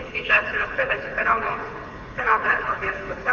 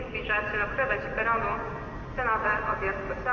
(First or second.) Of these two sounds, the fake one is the first